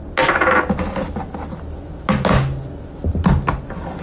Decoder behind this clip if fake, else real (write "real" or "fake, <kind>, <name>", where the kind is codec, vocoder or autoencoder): real